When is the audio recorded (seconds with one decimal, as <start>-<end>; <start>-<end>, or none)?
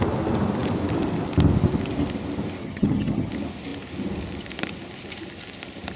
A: 0.0-2.6; 3.3-6.0